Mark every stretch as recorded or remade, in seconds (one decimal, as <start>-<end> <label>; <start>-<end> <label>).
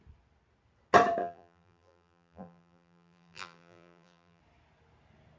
0.0-1.2 recorded; 1.2-4.4 remade; 4.4-5.4 recorded